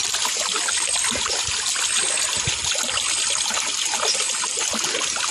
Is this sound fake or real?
real